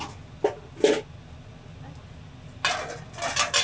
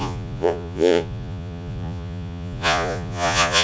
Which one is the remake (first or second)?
second